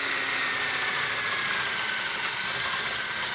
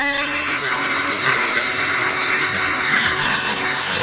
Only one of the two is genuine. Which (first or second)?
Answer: first